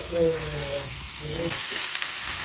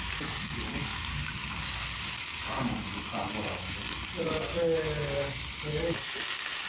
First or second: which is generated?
first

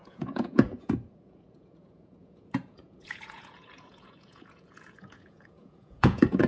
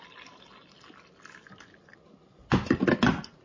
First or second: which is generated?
first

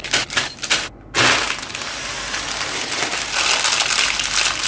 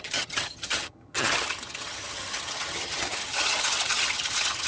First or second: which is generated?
second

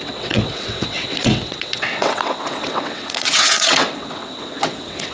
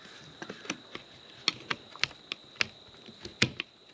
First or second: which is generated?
first